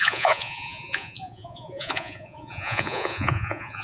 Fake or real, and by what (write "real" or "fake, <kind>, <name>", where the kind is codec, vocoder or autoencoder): fake, vocoder, Vocos